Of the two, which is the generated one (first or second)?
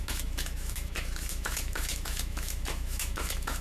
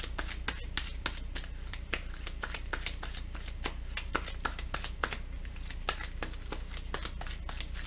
first